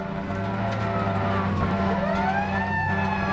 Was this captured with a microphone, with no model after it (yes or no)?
yes